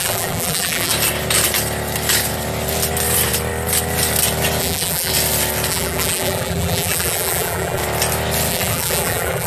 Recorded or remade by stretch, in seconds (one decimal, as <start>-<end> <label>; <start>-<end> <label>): 0.0-0.9 remade; 0.9-4.6 recorded; 4.6-5.1 remade; 5.1-5.7 recorded; 5.7-7.8 remade; 7.8-8.5 recorded; 8.5-9.5 remade